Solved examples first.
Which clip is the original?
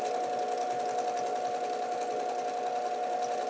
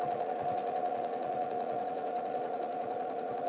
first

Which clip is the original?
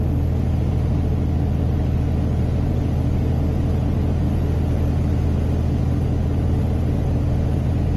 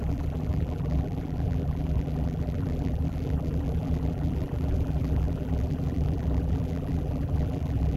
first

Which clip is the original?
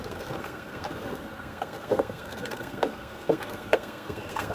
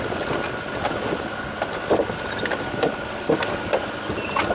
second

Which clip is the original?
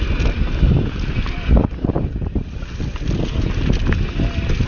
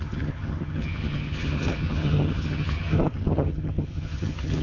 first